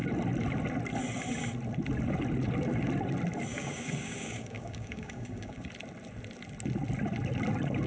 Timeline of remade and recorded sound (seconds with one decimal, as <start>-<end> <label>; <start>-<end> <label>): 0.0-3.5 recorded; 3.5-5.7 remade; 5.7-7.9 recorded